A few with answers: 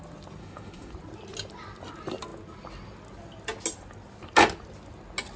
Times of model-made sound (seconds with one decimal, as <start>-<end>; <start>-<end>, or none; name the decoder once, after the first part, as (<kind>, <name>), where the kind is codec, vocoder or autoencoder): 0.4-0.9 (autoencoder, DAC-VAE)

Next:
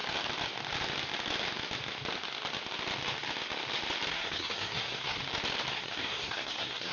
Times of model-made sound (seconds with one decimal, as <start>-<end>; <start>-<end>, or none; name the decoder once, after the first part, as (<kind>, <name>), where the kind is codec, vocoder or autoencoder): 4.1-5.2 (codec, SNAC); 5.7-6.9

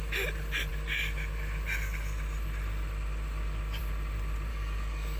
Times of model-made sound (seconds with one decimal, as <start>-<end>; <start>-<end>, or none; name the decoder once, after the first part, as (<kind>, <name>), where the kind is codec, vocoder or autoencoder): 4.5-5.2 (codec, DAC)

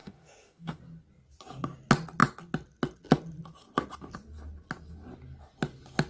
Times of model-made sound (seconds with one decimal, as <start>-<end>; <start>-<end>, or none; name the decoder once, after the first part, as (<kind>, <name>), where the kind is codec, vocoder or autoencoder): 0.0-0.8 (autoencoder, DAC-VAE)

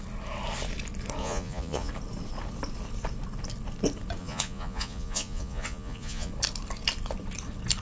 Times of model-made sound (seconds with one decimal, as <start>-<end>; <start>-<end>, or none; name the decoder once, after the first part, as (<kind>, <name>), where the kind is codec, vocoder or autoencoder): 1.2-1.9 (vocoder, Vocos); 4.2-6.3

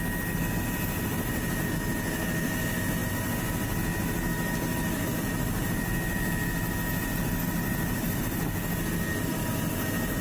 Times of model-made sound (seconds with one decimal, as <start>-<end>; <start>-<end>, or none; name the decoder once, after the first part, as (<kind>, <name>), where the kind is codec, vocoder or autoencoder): none